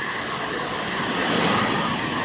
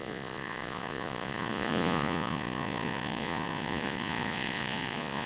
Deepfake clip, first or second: second